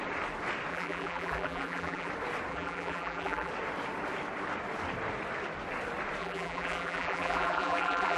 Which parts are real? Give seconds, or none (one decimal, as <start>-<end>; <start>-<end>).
0.0-0.7; 2.1-2.5; 3.5-6.2